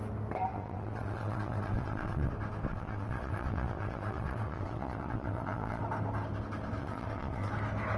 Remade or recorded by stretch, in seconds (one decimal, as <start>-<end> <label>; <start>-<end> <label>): 0.0-0.5 recorded; 0.5-2.3 remade; 2.3-2.7 recorded; 2.7-5.8 remade; 5.8-6.8 recorded; 6.8-7.5 remade; 7.5-8.0 recorded